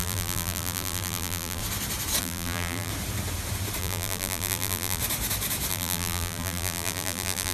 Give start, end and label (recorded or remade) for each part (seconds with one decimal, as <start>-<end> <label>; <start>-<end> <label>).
0.0-1.6 remade; 1.6-2.2 recorded; 2.2-2.9 remade; 2.9-3.8 recorded; 3.8-5.0 remade; 5.0-5.7 recorded; 5.7-7.5 remade